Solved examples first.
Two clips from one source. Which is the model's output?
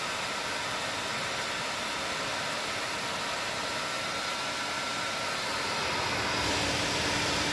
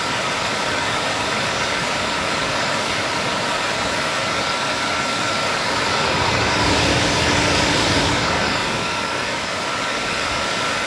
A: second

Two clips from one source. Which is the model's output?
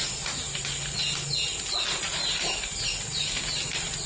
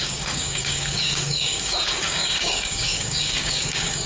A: second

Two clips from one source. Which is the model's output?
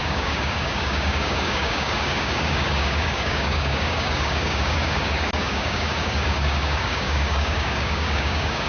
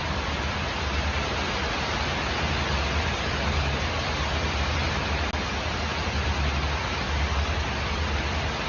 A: first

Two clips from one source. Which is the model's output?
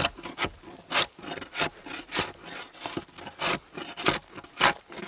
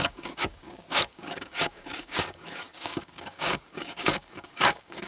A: second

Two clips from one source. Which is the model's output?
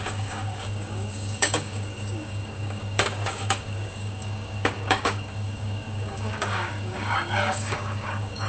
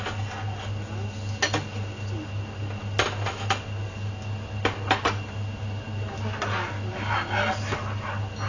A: first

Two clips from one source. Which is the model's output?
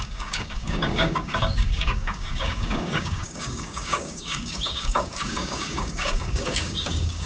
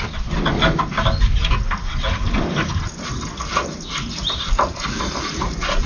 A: first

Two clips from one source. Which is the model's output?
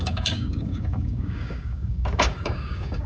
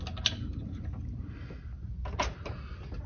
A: first